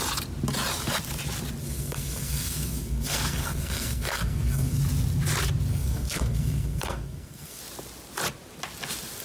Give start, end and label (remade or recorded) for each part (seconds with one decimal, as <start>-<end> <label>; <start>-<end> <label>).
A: 0.0-1.6 recorded; 1.6-4.8 remade; 4.8-5.7 recorded; 5.7-7.6 remade; 7.6-9.2 recorded